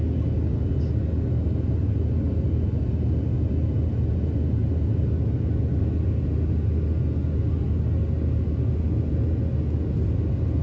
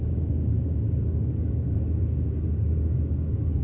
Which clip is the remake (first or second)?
second